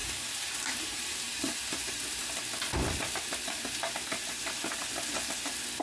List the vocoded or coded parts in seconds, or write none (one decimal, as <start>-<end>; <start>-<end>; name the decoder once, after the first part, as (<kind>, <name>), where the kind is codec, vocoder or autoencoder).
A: 0.0-2.2 (vocoder, BigVGAN v2)

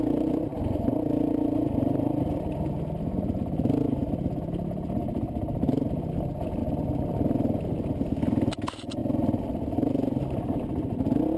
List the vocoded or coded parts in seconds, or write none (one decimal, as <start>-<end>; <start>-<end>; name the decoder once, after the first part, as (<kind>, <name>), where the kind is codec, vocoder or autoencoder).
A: 0.0-6.6 (vocoder, BigVGAN v2); 7.8-11.4

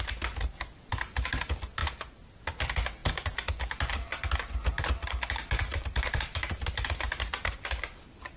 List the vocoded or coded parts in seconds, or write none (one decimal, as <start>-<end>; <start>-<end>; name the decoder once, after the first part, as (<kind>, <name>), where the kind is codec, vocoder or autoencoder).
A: 1.8-2.4 (vocoder, BigVGAN v2); 5.7-6.7

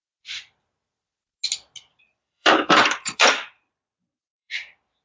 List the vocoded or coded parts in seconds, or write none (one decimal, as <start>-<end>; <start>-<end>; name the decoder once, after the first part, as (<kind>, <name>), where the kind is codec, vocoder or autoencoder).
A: 1.9-4.5 (vocoder, BigVGAN v2)

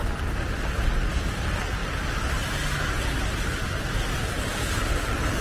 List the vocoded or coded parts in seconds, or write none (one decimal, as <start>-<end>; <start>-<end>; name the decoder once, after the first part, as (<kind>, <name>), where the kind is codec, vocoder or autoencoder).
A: 0.0-0.9 (vocoder, BigVGAN v2)

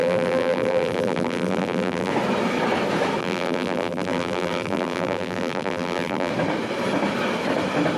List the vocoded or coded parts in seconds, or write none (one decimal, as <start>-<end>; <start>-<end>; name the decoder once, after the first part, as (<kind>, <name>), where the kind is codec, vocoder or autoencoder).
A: 0.0-2.1 (vocoder, BigVGAN v2); 3.2-6.3

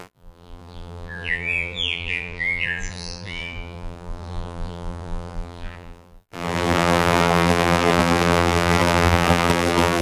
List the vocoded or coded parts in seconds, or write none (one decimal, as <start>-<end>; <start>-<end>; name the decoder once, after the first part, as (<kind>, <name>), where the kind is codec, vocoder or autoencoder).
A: 0.0-10.0 (vocoder, BigVGAN v2)